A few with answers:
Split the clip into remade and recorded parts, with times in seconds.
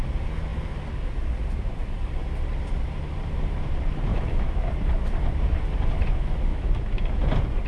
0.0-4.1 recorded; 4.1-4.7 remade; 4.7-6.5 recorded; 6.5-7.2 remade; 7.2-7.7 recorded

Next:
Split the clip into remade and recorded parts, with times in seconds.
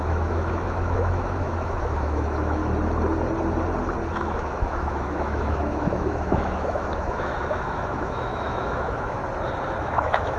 0.0-2.6 remade; 2.6-4.1 recorded; 4.1-9.2 remade; 9.2-9.8 recorded; 9.8-10.4 remade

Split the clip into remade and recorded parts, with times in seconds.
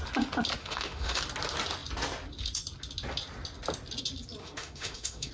0.0-0.6 recorded; 0.6-1.2 remade; 1.2-4.4 recorded; 4.4-5.3 remade